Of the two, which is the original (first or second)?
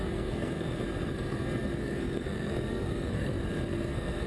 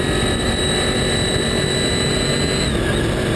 second